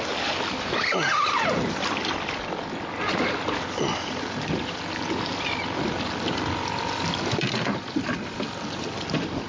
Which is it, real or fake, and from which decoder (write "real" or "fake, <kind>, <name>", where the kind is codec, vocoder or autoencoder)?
real